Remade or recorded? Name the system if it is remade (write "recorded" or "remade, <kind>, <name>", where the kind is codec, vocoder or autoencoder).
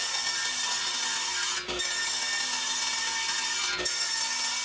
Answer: recorded